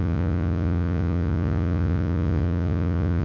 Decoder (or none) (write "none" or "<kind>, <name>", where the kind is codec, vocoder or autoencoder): vocoder, Vocos